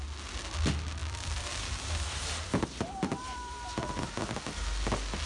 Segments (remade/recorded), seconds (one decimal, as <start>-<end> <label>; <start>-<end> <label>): 0.0-1.0 recorded; 1.0-3.9 remade; 3.9-5.3 recorded